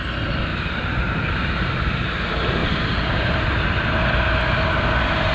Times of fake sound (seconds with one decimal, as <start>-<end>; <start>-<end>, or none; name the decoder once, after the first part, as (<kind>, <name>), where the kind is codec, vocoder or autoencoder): 0.5-2.1 (vocoder, BigVGAN v2); 2.6-3.5